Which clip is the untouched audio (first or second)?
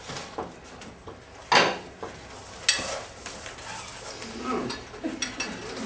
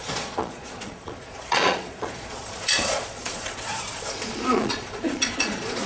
first